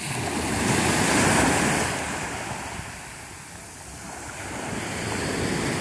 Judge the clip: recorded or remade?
recorded